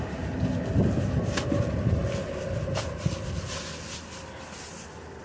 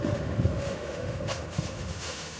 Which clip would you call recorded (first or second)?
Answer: first